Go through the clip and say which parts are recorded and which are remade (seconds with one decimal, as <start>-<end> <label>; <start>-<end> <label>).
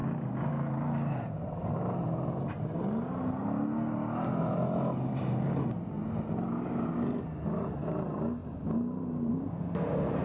0.0-10.2 recorded